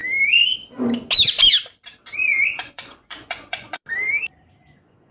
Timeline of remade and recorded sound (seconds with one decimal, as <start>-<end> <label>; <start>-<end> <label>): 0.0-2.4 recorded; 2.4-3.8 remade; 3.8-4.6 recorded; 4.6-5.1 remade